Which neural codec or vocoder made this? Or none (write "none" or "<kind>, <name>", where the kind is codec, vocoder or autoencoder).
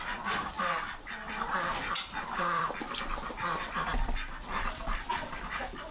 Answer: none